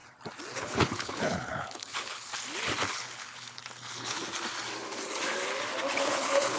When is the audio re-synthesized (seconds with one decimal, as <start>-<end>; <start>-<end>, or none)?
0.6-2.3; 2.9-4.2; 5.9-6.6